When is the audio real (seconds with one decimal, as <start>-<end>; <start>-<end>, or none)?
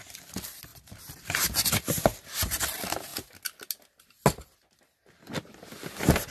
0.0-6.3